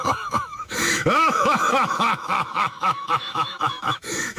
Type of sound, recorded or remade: remade